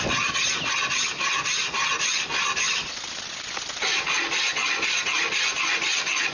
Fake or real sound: real